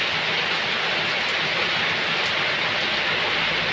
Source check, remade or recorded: recorded